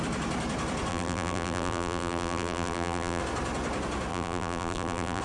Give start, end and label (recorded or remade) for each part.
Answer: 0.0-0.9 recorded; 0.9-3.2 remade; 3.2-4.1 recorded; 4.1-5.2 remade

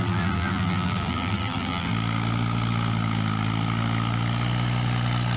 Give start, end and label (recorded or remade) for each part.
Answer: 0.0-1.9 remade; 1.9-5.4 recorded

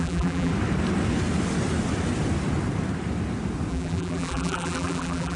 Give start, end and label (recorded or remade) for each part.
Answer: 0.0-0.5 remade; 0.5-3.7 recorded; 3.7-5.4 remade

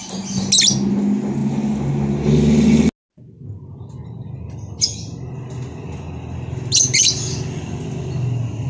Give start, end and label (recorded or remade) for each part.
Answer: 0.0-8.7 recorded

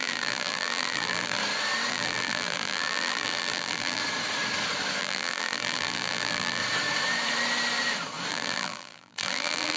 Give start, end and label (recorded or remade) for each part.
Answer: 0.0-1.4 remade; 1.4-1.9 recorded; 1.9-4.0 remade; 4.0-5.0 recorded; 5.0-6.6 remade; 6.6-8.3 recorded; 8.3-9.8 remade